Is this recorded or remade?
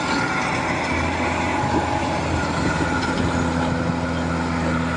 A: recorded